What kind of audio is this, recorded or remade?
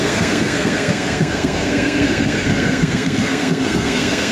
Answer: remade